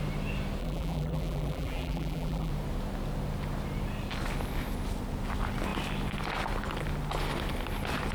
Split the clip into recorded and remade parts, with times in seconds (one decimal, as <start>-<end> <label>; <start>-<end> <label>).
0.0-0.6 recorded; 0.6-2.5 remade; 2.5-8.1 recorded